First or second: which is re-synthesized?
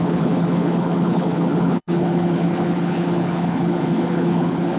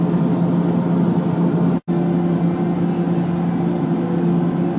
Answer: first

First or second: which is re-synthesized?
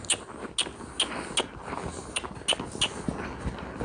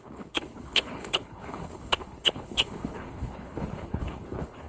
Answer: second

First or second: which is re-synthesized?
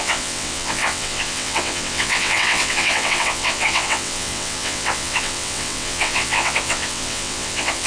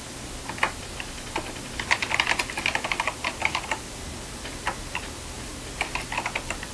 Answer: first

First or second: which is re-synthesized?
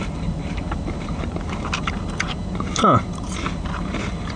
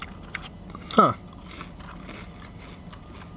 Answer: first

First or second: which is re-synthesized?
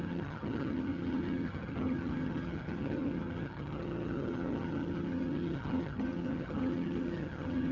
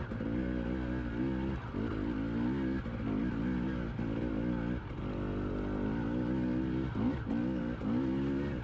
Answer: first